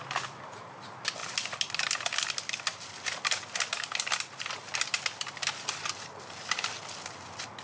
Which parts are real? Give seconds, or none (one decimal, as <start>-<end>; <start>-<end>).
0.0-7.6